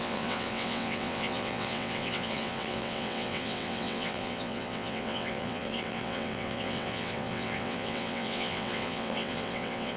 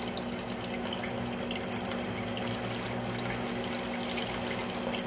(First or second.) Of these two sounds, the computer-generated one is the first